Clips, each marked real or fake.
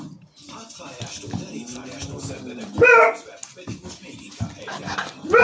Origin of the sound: real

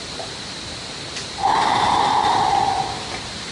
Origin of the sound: real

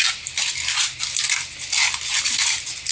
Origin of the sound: real